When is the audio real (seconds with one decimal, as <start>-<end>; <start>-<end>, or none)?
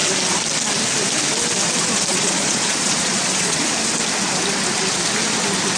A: 0.0-2.1; 3.6-5.8